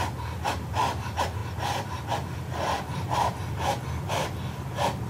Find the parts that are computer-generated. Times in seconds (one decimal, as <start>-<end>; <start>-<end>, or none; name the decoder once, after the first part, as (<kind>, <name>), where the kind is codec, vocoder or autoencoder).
none